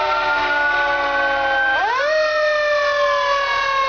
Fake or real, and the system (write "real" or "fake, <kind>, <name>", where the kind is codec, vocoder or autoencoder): real